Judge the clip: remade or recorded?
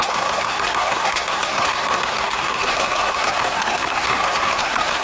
remade